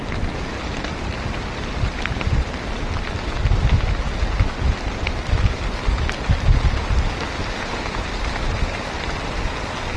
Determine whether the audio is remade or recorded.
recorded